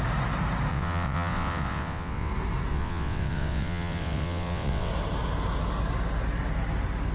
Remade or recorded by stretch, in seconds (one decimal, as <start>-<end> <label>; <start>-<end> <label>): 0.0-0.7 recorded; 0.7-2.3 remade; 2.3-2.7 recorded; 2.7-4.9 remade; 4.9-7.1 recorded